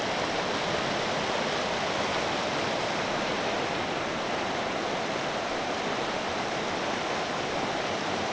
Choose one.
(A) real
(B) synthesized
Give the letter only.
A